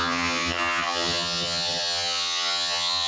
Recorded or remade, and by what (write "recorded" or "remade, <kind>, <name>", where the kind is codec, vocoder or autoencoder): remade, vocoder, HiFi-GAN